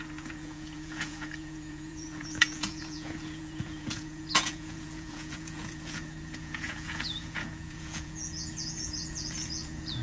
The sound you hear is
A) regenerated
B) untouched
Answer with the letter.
A